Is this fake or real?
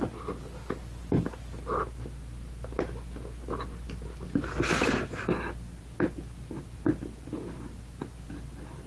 real